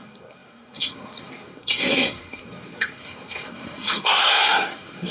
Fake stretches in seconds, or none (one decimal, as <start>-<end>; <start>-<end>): 0.0-5.1